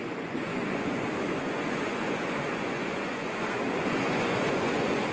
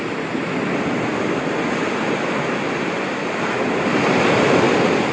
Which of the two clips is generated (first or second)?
first